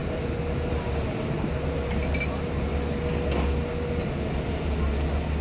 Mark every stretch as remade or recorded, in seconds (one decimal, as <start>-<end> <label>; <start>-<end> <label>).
0.0-2.7 remade; 2.7-4.0 recorded; 4.0-4.9 remade; 4.9-5.4 recorded